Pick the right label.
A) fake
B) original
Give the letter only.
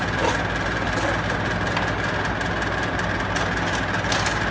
B